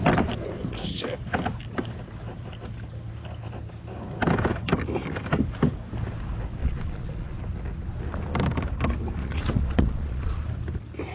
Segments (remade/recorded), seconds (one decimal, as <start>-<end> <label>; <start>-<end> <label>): 0.0-6.6 recorded; 6.6-7.4 remade; 7.4-9.2 recorded; 9.2-10.4 remade; 10.4-11.1 recorded